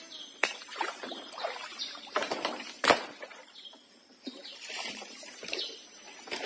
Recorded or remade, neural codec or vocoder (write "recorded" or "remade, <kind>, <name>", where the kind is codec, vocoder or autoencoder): remade, vocoder, BigVGAN v2